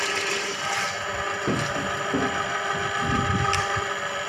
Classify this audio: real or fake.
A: real